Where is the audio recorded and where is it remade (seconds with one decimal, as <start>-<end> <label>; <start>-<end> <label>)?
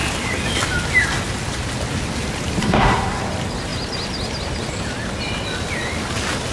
0.0-2.6 recorded; 2.6-3.2 remade; 3.2-6.5 recorded